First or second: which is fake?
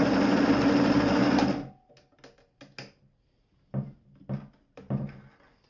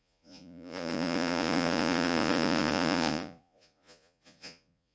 second